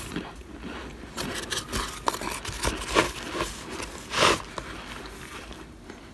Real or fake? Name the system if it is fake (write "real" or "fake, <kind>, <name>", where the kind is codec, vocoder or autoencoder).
real